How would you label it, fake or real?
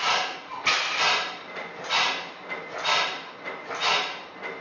real